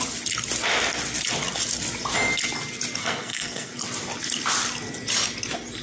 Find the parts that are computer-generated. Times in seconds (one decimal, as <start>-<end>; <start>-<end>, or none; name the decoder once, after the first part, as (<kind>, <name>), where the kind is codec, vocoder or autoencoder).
3.0-3.7 (codec, SNAC)